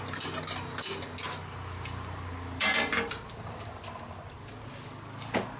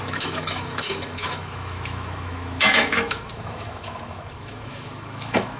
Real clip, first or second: first